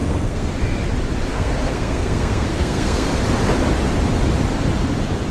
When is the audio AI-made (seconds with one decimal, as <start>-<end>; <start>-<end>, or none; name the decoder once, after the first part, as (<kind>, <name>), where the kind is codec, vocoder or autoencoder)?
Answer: 0.0-0.5 (codec, SNAC); 1.3-3.1